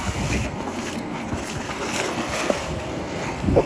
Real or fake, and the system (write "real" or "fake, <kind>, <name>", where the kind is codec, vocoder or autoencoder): fake, codec, SNAC